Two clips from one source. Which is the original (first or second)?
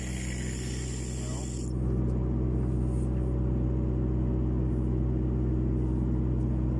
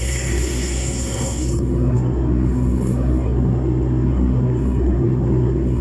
first